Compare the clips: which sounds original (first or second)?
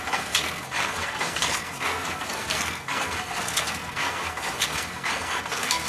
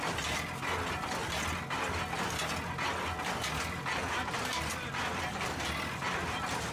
second